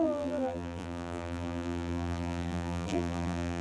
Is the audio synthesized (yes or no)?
yes